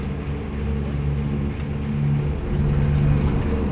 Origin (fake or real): real